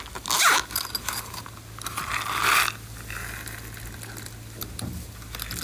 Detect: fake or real real